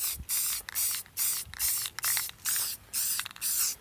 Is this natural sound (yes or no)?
yes